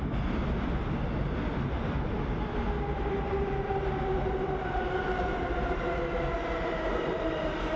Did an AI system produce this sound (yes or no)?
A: no